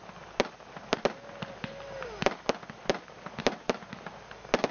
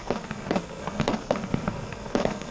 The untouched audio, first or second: first